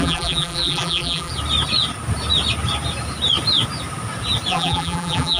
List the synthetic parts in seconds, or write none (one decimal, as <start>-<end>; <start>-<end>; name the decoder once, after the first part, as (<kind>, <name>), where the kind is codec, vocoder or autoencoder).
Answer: 0.0-1.3 (vocoder, BigVGAN v2); 4.5-5.4